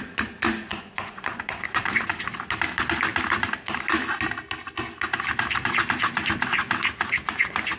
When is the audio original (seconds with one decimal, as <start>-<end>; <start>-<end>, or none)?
0.0-0.7; 2.1-7.8